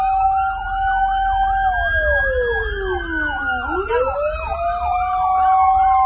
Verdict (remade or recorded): recorded